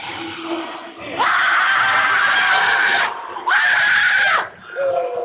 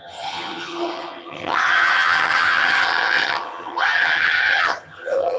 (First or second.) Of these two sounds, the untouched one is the first